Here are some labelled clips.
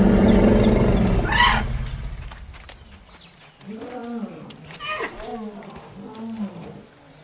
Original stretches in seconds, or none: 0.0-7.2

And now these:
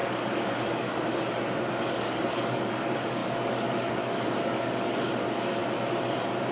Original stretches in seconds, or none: 0.9-1.9; 5.6-6.5

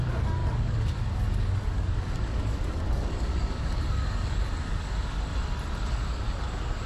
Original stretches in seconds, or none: 5.3-5.9